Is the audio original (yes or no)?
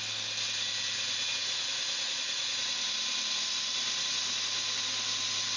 yes